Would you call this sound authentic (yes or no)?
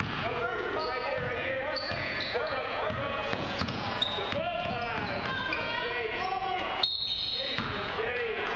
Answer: no